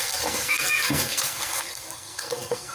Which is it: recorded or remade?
remade